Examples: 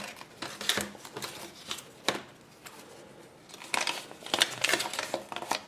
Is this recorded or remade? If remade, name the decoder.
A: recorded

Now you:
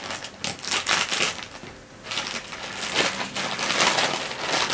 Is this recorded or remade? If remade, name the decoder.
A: recorded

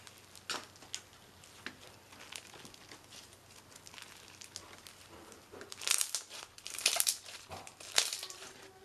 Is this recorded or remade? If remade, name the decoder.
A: recorded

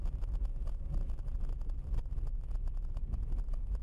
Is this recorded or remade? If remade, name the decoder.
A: recorded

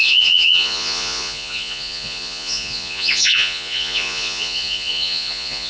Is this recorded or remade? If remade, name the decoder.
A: remade, vocoder, Vocos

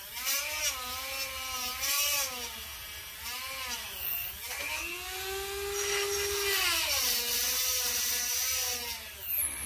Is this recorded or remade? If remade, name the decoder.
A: recorded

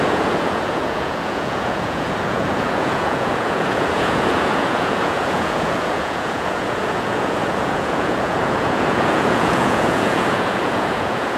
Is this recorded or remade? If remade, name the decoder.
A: remade, vocoder, Vocos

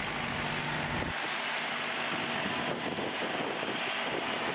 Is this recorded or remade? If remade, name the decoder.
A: recorded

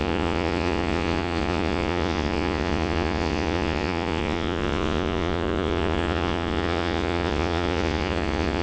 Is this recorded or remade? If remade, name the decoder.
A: remade, vocoder, Vocos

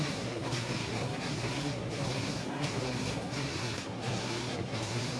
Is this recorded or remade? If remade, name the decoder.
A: remade, codec, SNAC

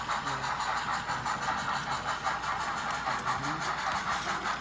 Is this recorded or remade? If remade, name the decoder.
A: recorded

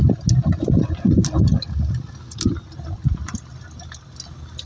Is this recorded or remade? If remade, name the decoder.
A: recorded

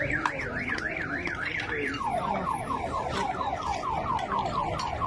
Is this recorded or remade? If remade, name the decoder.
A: recorded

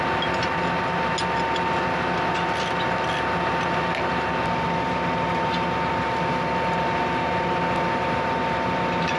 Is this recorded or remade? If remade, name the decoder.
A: recorded